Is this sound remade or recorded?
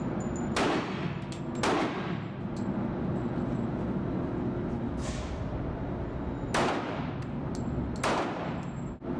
recorded